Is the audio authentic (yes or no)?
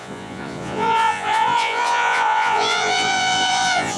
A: no